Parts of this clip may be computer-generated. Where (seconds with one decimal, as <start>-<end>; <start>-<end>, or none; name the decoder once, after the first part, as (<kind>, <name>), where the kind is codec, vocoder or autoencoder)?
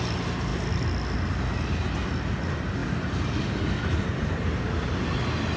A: none